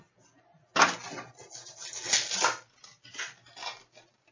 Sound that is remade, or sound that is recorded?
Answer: recorded